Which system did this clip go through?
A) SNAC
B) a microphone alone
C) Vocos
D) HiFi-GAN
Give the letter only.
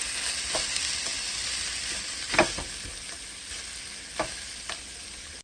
B